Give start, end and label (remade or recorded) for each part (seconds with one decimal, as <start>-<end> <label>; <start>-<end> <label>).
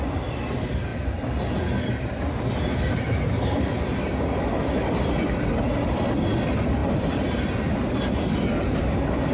0.0-9.3 recorded